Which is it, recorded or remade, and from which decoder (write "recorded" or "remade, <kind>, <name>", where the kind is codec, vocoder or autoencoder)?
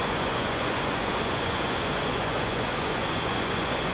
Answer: remade, vocoder, Vocos